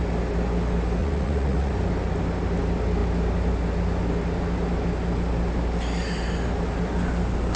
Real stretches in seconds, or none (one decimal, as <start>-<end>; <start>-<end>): 0.0-1.0; 1.7-7.6